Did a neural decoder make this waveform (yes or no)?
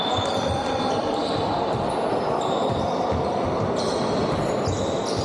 yes